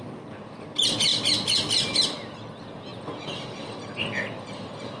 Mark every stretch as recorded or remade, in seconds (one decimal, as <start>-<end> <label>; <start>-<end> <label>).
0.0-5.0 recorded